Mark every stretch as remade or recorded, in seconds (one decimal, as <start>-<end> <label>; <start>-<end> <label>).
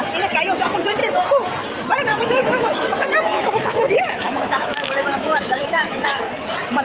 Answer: 0.0-2.1 recorded; 2.1-6.2 remade; 6.2-6.8 recorded